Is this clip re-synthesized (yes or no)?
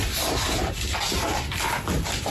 no